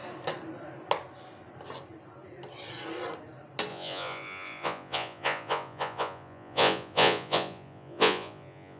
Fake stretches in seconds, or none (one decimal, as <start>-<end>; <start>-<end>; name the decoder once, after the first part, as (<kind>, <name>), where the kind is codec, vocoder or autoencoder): 3.7-8.8 (vocoder, Vocos)